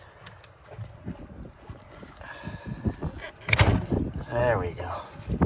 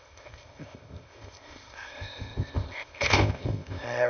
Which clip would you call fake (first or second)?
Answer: second